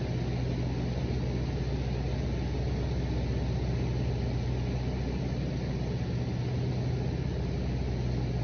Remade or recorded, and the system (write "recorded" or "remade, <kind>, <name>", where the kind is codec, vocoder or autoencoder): recorded